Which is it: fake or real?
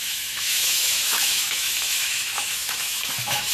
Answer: fake